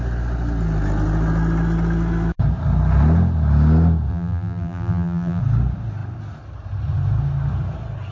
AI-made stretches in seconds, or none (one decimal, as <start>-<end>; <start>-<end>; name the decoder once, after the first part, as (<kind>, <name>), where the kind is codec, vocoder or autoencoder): 4.1-5.4 (vocoder, BigVGAN v2)